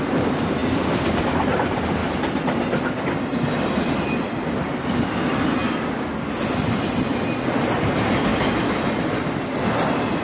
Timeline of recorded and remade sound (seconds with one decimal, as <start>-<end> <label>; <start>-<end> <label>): 0.0-10.2 recorded